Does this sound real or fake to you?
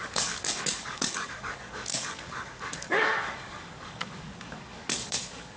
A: fake